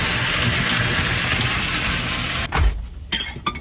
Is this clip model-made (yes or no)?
no